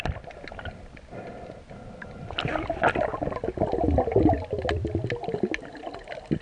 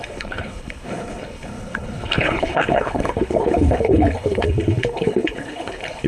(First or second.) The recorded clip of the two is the first